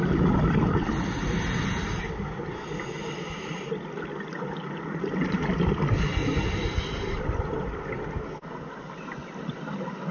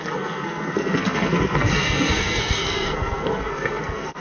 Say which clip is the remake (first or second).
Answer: second